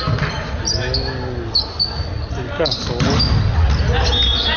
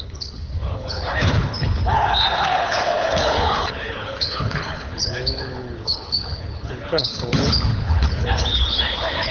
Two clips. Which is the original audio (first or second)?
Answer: first